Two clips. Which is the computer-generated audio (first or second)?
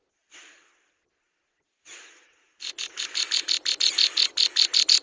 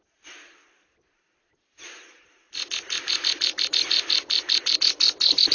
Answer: second